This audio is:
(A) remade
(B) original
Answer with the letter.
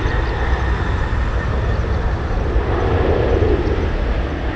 B